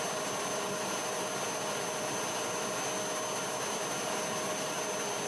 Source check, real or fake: real